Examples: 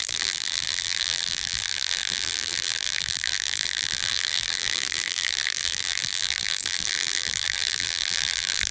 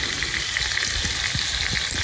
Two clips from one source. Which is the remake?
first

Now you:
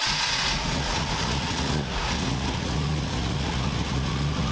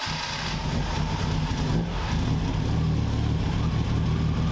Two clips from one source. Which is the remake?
first